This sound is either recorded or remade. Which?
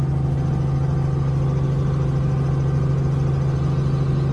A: recorded